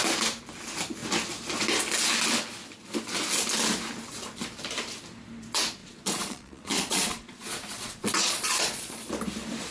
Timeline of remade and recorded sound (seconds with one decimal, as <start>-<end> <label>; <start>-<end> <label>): 0.0-5.8 recorded; 5.8-9.1 remade; 9.1-9.7 recorded